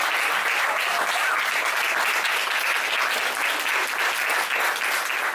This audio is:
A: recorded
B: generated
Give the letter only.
A